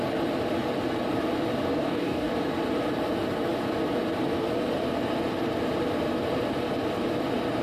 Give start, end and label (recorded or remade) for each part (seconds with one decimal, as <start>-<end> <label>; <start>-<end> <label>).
0.0-1.7 recorded; 1.7-2.3 remade; 2.3-7.6 recorded